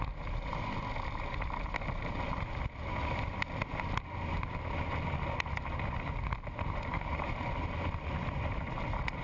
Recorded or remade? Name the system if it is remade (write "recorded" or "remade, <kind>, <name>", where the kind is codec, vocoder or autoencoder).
recorded